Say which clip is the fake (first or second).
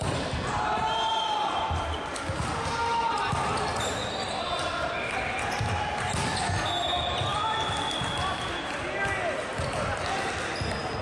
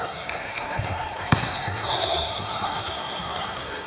second